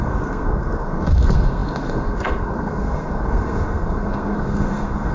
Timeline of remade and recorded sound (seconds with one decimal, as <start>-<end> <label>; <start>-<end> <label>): 0.0-5.1 remade